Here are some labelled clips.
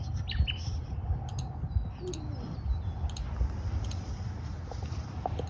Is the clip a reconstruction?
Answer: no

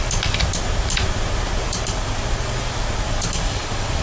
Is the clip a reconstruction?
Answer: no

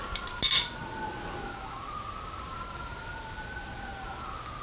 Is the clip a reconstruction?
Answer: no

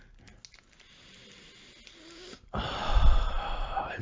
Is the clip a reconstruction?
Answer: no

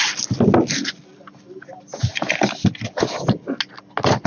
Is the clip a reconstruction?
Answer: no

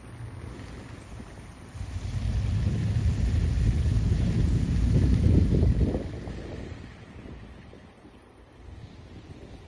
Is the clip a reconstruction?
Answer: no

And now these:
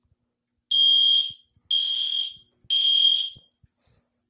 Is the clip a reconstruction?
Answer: no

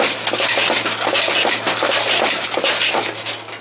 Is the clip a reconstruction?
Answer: no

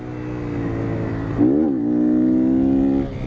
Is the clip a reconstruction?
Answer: no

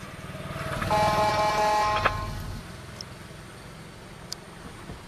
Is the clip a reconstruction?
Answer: no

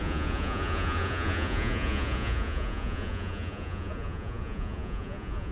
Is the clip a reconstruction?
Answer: yes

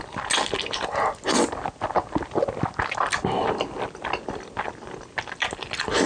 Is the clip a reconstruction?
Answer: no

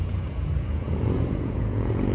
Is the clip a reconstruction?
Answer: yes